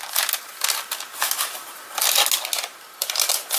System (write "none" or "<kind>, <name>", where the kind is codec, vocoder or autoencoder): none